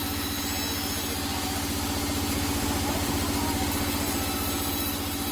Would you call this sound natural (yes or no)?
yes